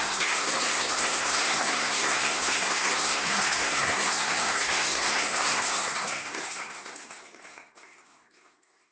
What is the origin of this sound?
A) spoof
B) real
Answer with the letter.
A